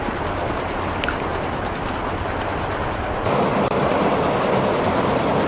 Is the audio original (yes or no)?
yes